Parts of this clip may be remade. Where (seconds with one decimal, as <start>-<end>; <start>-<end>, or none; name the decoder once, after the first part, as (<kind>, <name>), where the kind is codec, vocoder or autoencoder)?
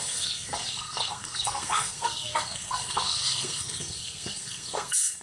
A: 0.0-5.2 (codec, SNAC)